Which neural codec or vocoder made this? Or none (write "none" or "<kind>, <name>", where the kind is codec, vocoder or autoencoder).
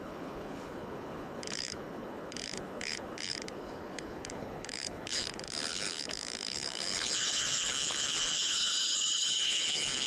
codec, HILCodec